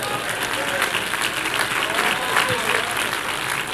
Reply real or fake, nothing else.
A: real